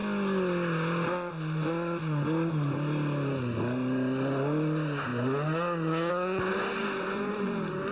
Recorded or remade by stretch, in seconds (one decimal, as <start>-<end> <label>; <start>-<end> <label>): 0.0-7.9 recorded